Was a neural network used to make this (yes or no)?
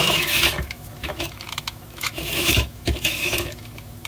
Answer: yes